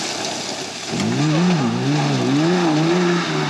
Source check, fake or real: real